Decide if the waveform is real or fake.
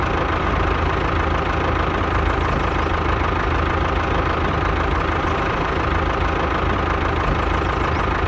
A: real